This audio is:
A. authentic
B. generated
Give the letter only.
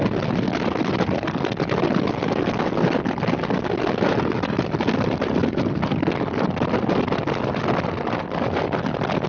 A